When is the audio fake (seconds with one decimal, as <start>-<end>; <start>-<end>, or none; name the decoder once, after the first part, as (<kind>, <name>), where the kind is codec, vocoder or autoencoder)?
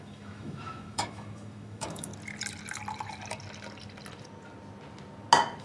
0.0-2.1 (autoencoder, DAC-VAE)